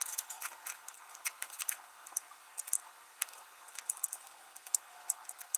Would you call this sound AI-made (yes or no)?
yes